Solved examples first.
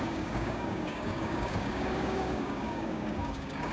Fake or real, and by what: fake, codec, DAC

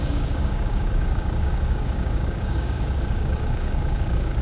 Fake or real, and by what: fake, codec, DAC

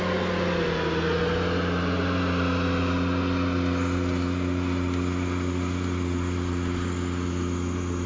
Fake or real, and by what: real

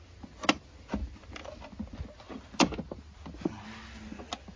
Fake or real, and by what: real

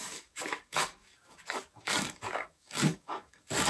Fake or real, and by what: fake, codec, DAC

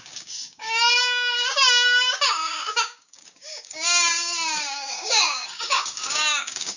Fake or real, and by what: fake, codec, DAC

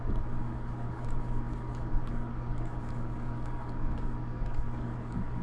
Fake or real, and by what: fake, codec, DAC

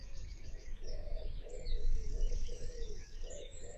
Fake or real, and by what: fake, codec, DAC